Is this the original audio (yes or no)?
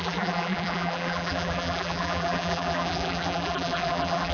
no